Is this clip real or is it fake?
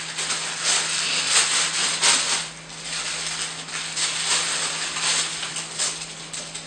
real